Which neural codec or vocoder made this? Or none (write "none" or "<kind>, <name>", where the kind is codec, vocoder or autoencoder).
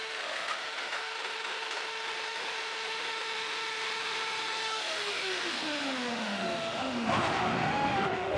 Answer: autoencoder, DAC-VAE